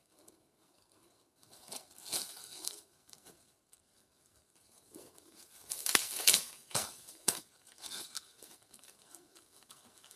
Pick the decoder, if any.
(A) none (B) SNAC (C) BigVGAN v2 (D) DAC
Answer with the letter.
B